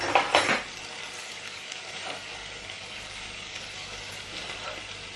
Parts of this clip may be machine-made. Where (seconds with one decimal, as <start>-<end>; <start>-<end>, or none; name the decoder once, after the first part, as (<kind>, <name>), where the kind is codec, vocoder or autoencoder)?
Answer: 1.2-4.3 (codec, DAC)